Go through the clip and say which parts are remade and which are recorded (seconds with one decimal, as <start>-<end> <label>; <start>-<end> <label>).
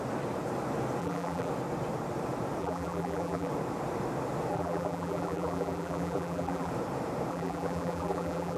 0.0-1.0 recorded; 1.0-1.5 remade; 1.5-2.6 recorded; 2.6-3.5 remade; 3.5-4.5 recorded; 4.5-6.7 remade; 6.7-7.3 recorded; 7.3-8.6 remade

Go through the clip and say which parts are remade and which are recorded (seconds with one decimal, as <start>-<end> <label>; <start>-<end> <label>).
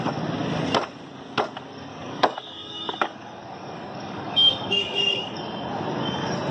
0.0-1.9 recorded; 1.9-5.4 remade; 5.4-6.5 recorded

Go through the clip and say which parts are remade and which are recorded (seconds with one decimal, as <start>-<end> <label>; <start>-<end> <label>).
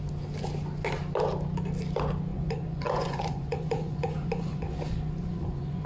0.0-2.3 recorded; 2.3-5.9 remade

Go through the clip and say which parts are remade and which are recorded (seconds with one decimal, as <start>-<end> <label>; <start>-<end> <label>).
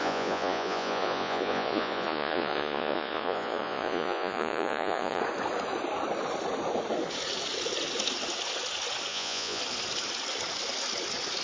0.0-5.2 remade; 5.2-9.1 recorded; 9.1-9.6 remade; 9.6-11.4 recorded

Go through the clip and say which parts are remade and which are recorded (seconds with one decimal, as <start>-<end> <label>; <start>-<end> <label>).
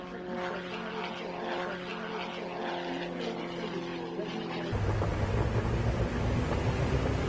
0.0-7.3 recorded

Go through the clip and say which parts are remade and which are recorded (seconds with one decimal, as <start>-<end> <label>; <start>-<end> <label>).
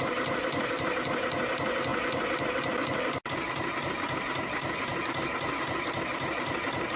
0.0-7.0 recorded